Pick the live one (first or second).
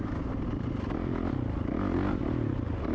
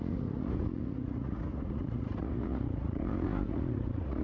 first